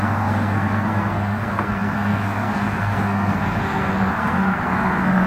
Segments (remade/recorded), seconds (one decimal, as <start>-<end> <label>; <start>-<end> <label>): 0.0-5.3 remade